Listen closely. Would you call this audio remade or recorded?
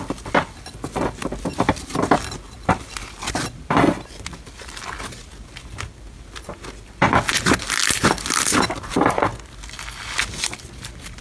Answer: recorded